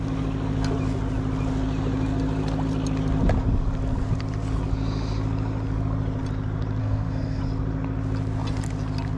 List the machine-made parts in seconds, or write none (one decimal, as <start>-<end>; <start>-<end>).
6.8-7.4